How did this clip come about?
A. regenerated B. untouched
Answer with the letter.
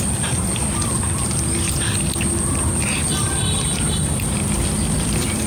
B